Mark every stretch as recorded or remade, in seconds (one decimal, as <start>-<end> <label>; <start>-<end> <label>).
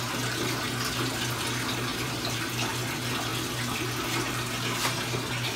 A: 0.0-1.9 recorded; 1.9-2.8 remade; 2.8-5.6 recorded